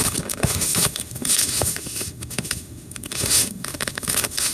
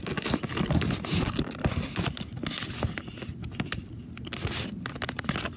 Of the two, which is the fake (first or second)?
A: first